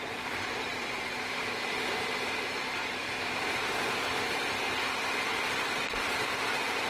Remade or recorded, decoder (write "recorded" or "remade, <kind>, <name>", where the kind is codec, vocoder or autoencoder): remade, vocoder, BigVGAN v2